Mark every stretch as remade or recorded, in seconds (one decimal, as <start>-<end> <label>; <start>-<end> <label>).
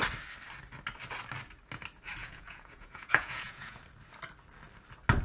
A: 0.0-2.2 recorded; 2.2-3.8 remade; 3.8-5.2 recorded